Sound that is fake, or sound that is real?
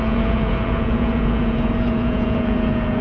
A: fake